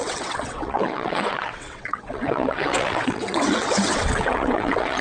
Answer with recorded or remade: remade